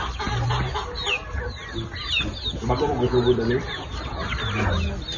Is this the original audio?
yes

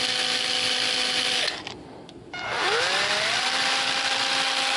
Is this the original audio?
yes